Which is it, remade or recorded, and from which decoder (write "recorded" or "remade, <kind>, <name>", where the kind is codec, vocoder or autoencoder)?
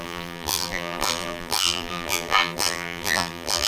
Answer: remade, vocoder, BigVGAN v2